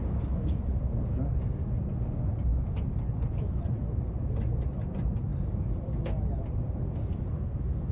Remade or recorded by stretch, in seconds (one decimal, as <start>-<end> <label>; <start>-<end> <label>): 0.0-7.9 recorded